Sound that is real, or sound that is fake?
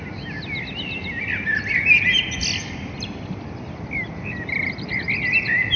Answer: real